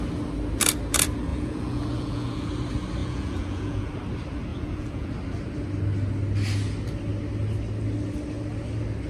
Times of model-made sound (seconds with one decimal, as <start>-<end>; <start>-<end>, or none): 1.3-2.5; 3.0-3.9; 4.5-5.1